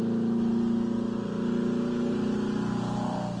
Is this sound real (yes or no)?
yes